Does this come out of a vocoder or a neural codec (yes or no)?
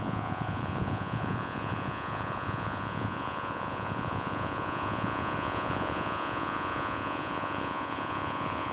yes